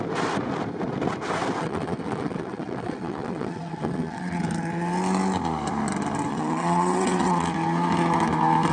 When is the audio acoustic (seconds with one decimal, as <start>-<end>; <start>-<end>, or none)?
0.0-1.6; 4.4-6.3; 7.5-8.7